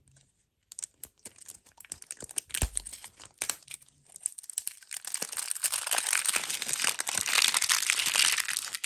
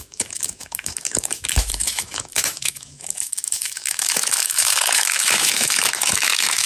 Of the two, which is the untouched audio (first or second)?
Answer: first